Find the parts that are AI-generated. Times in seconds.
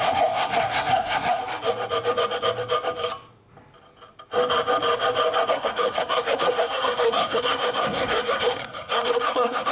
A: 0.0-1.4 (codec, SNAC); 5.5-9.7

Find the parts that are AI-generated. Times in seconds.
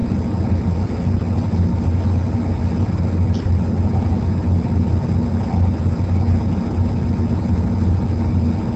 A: none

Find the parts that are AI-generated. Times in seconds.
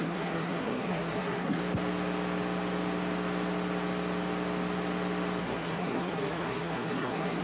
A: 0.0-1.6 (codec, SNAC); 5.4-7.4